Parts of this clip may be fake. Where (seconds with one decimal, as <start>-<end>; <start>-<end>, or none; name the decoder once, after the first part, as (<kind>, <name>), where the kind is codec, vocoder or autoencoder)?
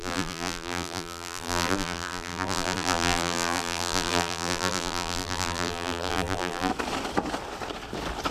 0.0-6.7 (vocoder, BigVGAN v2)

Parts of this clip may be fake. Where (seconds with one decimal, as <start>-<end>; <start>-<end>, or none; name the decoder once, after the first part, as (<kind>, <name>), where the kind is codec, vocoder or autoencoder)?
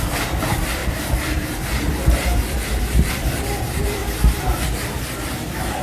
0.0-0.8 (vocoder, BigVGAN v2); 3.1-4.0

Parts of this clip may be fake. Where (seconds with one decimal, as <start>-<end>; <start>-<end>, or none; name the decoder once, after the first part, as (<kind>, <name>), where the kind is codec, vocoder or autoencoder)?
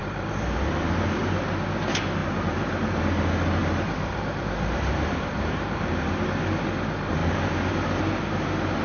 0.0-1.2 (vocoder, BigVGAN v2); 2.2-3.0; 3.6-6.2; 7.2-8.0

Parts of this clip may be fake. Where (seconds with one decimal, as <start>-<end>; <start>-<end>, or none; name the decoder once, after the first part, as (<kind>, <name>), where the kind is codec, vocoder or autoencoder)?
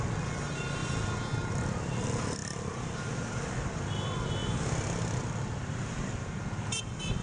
2.4-3.1 (vocoder, BigVGAN v2)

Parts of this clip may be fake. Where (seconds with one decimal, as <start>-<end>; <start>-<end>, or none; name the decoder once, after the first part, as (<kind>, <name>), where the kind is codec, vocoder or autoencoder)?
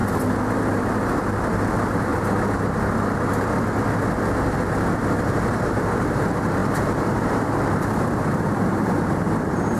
0.5-2.1 (vocoder, BigVGAN v2); 6.0-9.8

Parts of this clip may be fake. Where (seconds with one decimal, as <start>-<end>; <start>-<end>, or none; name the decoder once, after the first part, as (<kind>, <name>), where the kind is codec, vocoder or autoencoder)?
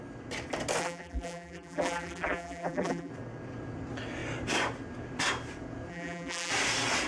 0.8-3.1 (vocoder, BigVGAN v2); 5.9-6.5